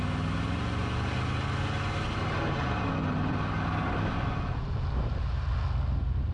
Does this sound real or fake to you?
real